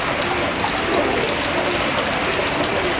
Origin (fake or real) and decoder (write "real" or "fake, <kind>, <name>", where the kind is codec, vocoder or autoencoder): real